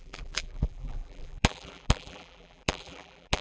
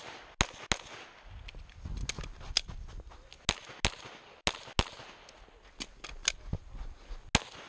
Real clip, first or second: second